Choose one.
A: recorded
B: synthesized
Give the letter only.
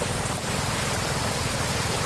A